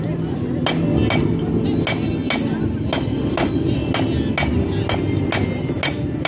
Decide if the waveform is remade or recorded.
recorded